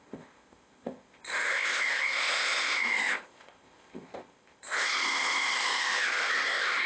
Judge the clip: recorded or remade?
remade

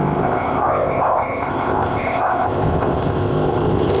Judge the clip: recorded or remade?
remade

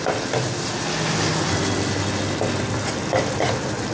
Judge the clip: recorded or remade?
recorded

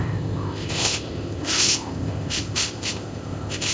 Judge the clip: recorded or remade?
remade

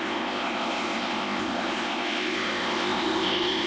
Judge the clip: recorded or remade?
remade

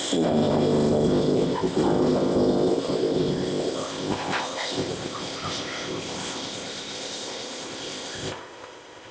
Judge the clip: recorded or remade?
remade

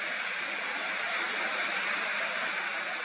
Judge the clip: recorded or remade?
recorded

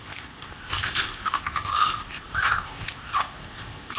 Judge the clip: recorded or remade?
remade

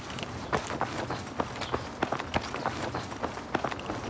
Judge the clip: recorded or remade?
recorded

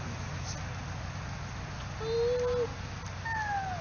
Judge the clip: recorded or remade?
recorded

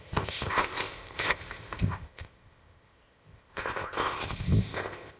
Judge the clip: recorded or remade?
remade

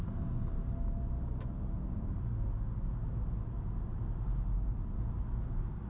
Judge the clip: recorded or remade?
recorded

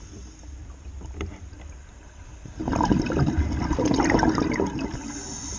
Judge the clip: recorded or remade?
recorded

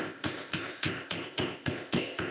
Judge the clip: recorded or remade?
remade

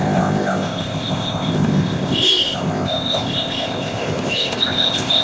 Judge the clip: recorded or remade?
remade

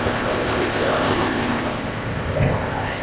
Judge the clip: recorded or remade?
remade